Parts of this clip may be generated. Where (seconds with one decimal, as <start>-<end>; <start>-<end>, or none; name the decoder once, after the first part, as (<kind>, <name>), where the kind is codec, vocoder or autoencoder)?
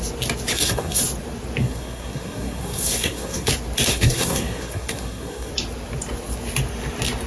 0.5-1.0 (codec, SNAC); 1.6-3.5; 3.9-5.5